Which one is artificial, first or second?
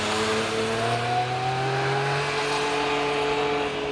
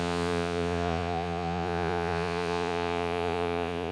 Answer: second